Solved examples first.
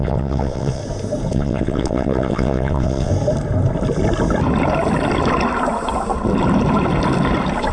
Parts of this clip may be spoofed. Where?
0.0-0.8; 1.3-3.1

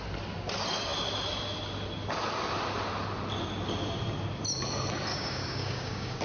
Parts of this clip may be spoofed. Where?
5.1-6.2

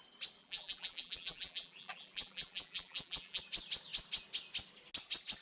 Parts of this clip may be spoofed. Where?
0.4-3.4